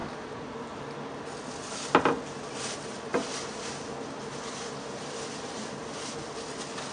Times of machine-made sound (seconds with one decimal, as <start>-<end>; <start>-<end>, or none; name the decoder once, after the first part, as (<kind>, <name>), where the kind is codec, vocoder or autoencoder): none